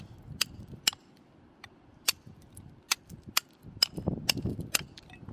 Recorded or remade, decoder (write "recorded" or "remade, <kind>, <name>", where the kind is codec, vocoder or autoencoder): recorded